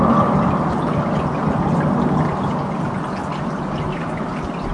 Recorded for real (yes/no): yes